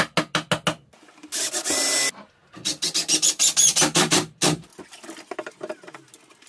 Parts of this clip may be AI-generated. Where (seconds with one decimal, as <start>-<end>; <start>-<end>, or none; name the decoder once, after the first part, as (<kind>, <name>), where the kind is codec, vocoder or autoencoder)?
none